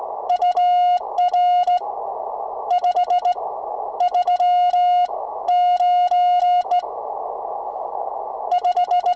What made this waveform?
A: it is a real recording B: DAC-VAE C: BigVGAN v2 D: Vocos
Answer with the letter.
A